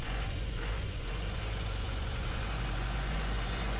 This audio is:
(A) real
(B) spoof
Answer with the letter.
B